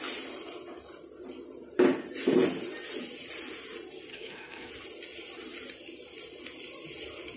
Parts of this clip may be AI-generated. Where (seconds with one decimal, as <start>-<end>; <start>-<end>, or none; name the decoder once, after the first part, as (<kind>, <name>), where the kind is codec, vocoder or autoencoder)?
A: 4.1-4.7 (codec, SNAC)